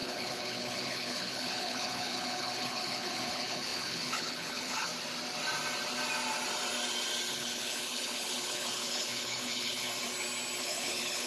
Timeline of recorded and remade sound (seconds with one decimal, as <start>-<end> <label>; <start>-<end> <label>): 0.0-4.9 remade; 4.9-7.3 recorded; 7.3-9.9 remade; 9.9-10.6 recorded; 10.6-11.3 remade